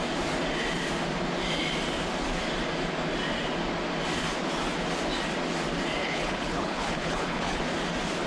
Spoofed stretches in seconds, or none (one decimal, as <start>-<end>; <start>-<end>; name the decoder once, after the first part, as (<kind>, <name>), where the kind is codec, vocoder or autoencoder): 6.0-7.6 (codec, HILCodec)